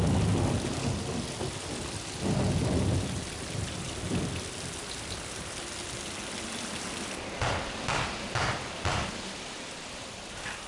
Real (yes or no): yes